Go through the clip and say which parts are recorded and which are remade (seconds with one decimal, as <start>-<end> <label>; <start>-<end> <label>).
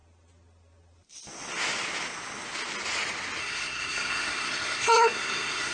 0.0-3.4 recorded; 3.4-5.7 remade